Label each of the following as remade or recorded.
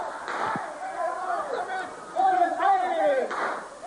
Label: recorded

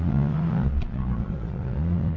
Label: remade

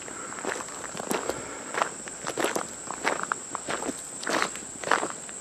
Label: recorded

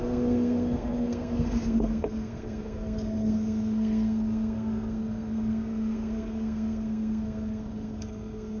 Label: remade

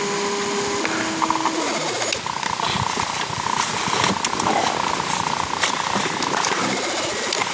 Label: recorded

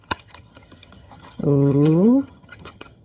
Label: remade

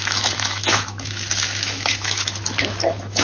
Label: remade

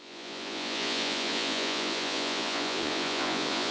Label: remade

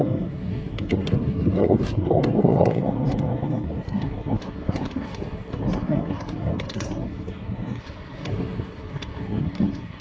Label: remade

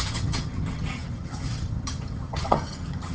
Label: remade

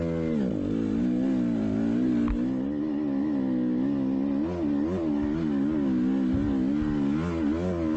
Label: recorded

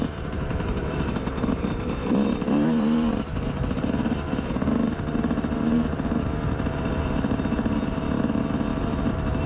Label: remade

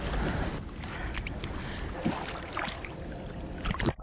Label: recorded